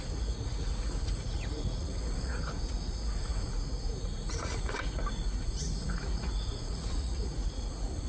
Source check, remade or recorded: remade